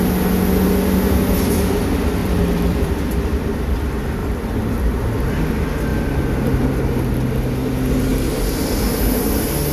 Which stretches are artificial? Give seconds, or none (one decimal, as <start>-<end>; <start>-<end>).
2.2-3.4; 4.2-5.5; 5.9-6.9; 8.1-8.7